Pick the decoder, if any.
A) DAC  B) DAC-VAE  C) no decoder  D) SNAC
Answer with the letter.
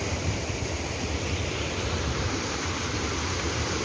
C